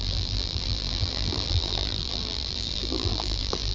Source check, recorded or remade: remade